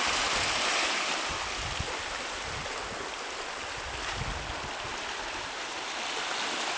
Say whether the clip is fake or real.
real